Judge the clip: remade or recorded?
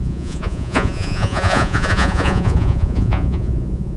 remade